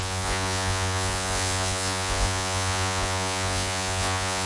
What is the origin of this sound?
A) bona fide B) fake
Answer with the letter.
B